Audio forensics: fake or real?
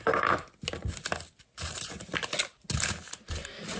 real